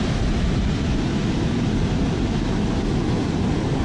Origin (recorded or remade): recorded